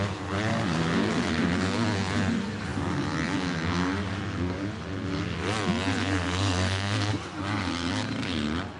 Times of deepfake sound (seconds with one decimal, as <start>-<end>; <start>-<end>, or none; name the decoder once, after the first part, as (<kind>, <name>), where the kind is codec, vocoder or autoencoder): 6.0-7.1 (codec, SNAC)